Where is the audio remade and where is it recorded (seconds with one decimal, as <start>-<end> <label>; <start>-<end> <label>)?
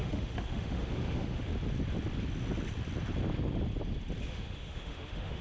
0.0-1.5 remade; 1.5-4.2 recorded; 4.2-5.4 remade